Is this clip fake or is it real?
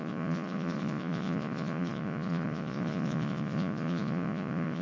fake